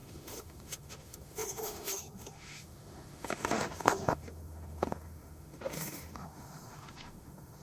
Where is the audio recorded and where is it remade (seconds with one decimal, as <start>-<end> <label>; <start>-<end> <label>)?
0.0-7.6 remade